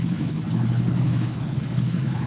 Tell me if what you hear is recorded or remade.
remade